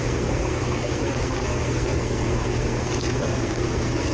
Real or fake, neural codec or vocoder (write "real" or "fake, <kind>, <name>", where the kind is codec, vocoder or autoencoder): fake, codec, SNAC